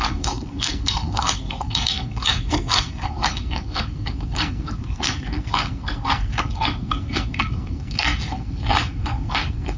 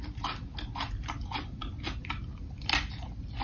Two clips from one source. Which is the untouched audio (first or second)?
second